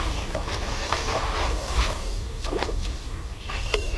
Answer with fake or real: fake